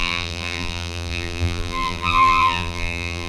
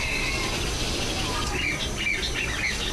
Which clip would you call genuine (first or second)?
second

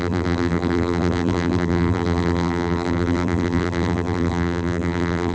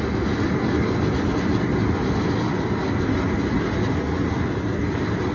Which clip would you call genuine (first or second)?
second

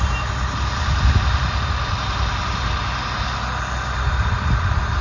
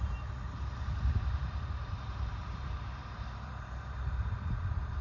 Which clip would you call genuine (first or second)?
first